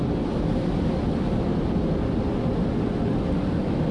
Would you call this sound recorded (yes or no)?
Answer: yes